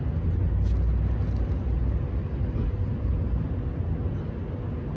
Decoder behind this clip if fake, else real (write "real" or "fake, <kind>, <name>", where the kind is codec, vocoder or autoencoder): real